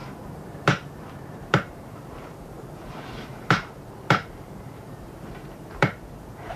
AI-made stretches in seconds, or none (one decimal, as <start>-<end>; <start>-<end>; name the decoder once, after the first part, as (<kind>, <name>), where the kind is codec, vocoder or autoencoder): 0.0-6.6 (vocoder, BigVGAN v2)